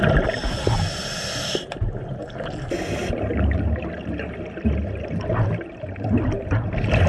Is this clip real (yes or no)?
yes